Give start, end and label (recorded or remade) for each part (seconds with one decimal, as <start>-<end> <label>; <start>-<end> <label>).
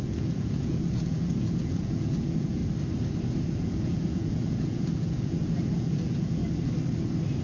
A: 0.0-2.6 remade; 2.6-3.5 recorded; 3.5-6.4 remade; 6.4-7.4 recorded